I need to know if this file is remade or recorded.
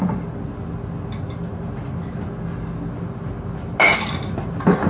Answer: recorded